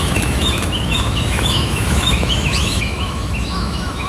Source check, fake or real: fake